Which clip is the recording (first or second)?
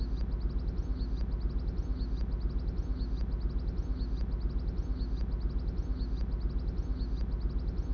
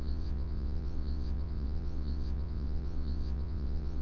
first